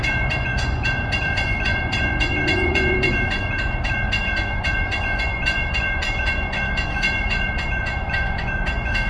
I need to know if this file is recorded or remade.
remade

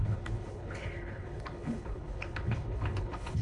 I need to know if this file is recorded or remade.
remade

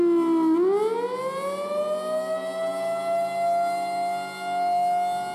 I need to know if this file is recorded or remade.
recorded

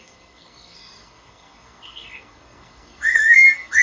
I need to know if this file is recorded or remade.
remade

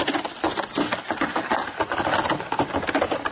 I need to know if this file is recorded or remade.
recorded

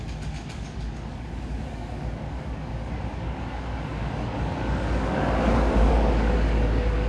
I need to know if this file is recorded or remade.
remade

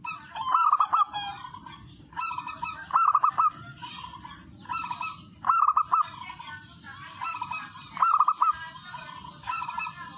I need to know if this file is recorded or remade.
recorded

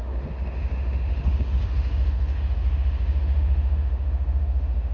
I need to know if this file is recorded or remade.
remade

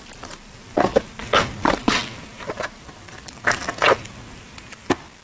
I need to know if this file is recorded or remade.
recorded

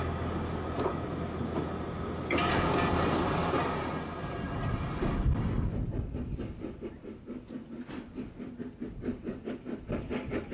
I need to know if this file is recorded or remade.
recorded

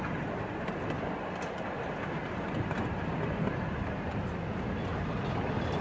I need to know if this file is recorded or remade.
recorded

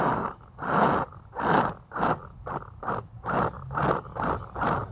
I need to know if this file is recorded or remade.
recorded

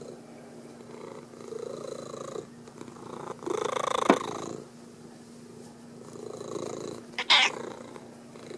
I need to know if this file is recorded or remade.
recorded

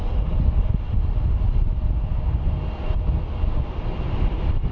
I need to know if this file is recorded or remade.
recorded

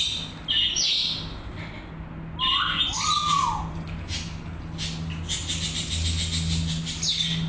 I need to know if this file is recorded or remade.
recorded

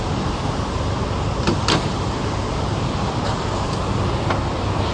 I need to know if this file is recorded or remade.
recorded